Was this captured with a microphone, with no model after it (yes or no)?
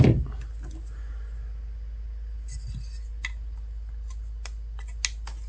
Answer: yes